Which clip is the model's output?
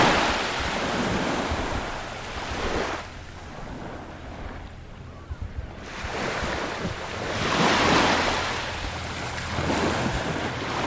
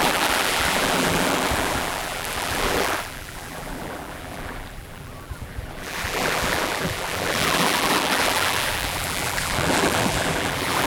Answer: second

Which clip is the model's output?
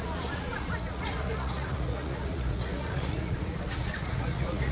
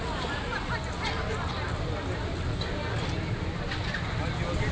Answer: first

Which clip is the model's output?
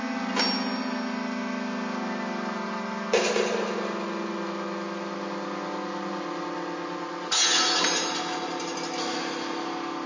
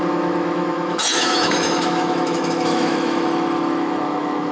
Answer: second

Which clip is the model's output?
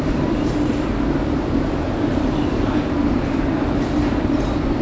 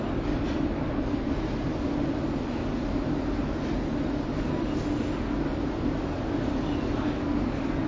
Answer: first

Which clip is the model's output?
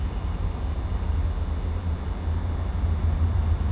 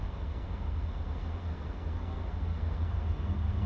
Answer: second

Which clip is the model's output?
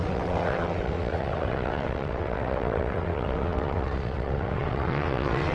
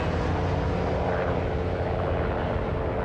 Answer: first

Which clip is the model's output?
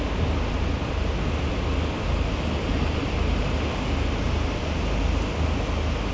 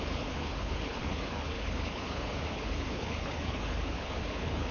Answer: second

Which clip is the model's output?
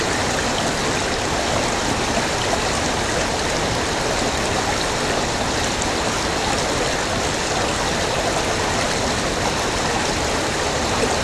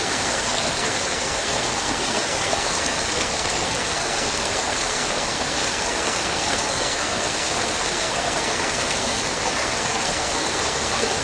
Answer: second